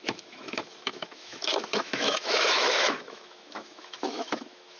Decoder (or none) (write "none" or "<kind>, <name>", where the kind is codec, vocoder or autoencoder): autoencoder, DAC-VAE